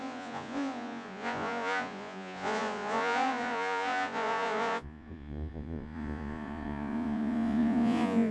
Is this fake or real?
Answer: fake